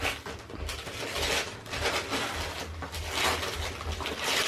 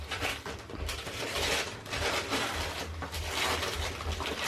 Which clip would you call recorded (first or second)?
first